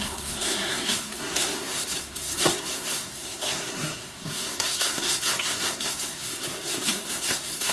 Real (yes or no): no